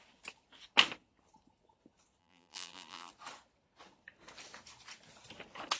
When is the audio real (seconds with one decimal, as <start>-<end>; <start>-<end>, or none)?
0.0-2.2; 3.1-5.8